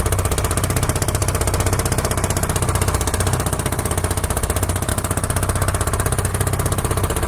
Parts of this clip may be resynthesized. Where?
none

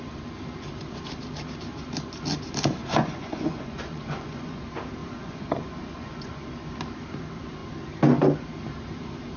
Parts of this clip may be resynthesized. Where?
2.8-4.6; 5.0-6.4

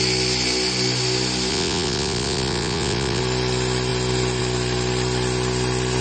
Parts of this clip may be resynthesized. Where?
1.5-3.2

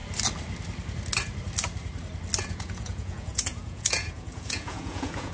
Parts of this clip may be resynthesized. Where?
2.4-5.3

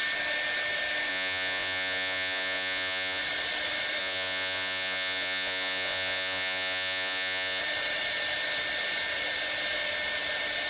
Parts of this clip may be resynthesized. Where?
1.1-3.2; 4.0-7.6

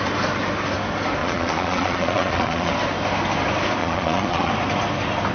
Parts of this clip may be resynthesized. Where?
1.2-2.7; 3.8-4.5

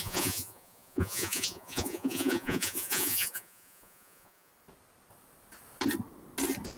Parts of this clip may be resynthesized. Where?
0.0-4.5

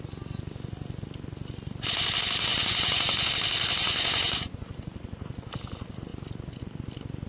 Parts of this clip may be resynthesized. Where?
2.5-3.3; 3.8-4.6